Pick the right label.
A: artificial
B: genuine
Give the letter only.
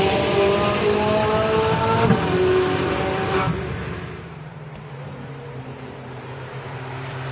A